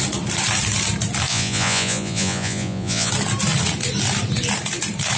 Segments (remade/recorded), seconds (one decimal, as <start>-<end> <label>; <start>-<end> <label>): 0.0-1.3 recorded; 1.3-3.1 remade; 3.1-5.2 recorded